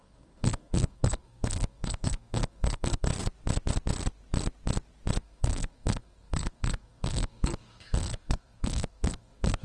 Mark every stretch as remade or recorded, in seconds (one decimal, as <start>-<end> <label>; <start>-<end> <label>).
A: 0.0-3.1 remade; 3.1-5.2 recorded; 5.2-9.6 remade